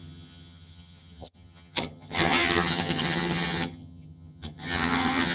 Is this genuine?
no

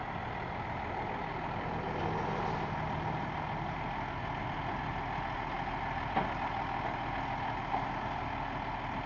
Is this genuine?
yes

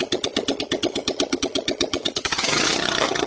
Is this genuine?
no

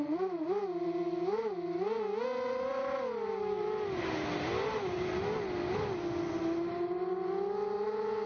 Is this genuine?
yes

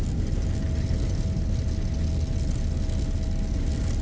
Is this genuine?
yes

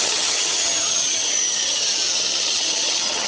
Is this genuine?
no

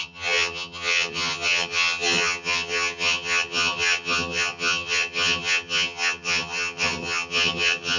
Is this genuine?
no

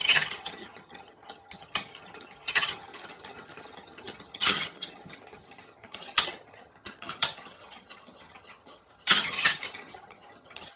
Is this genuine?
no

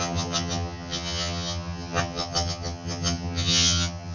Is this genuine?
no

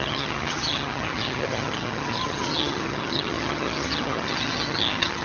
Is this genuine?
no